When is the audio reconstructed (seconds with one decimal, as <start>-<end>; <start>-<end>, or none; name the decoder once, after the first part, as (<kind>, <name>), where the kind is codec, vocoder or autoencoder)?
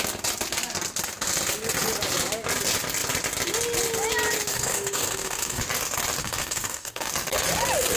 4.5-5.6 (codec, DAC); 6.2-7.1